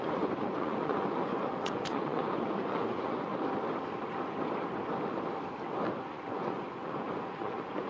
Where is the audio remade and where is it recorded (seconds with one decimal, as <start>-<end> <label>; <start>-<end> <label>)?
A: 0.0-3.3 remade; 3.3-6.0 recorded; 6.0-7.9 remade